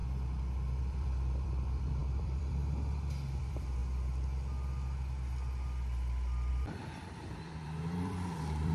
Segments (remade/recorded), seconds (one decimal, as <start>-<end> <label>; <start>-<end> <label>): 0.0-0.8 recorded; 0.8-3.8 remade; 3.8-6.5 recorded; 6.5-8.7 remade